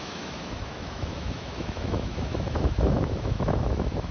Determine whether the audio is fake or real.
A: fake